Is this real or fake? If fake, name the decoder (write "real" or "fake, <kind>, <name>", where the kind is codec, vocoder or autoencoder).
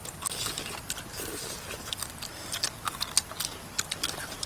real